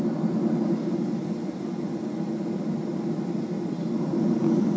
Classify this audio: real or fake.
real